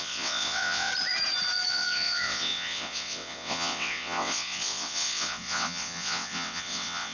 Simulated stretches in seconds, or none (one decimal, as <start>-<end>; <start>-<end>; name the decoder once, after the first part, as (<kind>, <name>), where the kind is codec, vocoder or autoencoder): 0.0-0.9 (vocoder, WaveNeXt); 1.7-7.1